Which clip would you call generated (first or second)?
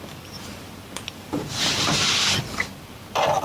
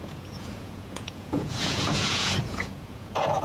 second